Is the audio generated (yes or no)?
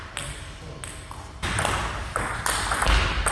no